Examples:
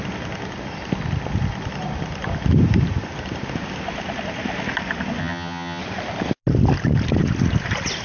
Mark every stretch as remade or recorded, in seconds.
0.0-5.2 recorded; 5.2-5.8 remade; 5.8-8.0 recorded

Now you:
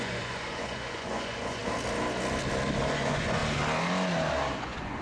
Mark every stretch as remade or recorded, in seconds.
0.0-1.6 remade; 1.6-2.9 recorded; 2.9-3.4 remade; 3.4-4.6 recorded; 4.6-5.0 remade